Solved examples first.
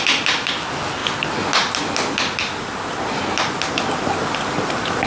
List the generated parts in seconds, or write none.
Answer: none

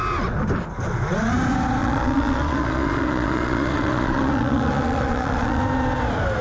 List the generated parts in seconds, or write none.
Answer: 1.8-5.6 (vocoder, Vocos)

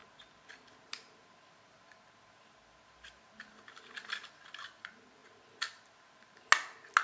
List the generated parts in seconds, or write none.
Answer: none

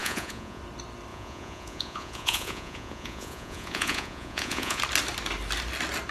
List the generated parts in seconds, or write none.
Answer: 0.0-0.6 (vocoder, Vocos); 1.1-4.8

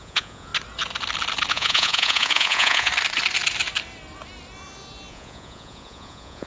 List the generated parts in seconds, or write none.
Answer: 0.0-0.5 (vocoder, Vocos); 1.5-2.9; 5.1-6.5